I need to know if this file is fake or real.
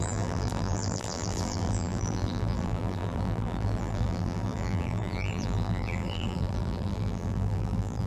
fake